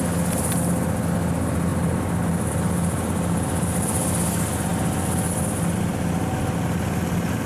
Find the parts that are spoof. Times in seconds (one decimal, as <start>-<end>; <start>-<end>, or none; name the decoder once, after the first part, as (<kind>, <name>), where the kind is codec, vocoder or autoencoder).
none